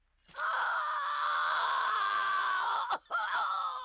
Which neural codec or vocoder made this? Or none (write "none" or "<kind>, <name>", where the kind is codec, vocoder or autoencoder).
vocoder, BigVGAN v2